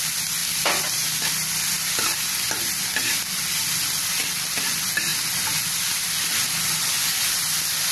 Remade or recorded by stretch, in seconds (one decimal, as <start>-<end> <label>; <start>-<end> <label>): 0.0-7.9 recorded